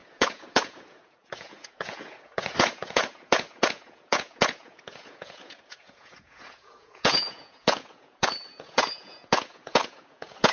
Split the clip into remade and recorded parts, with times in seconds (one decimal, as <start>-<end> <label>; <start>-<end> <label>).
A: 0.0-10.5 remade